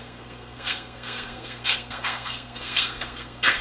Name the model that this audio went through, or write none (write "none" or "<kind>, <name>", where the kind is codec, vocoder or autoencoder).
codec, SNAC